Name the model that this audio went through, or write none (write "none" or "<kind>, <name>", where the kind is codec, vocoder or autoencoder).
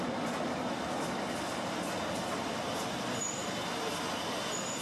none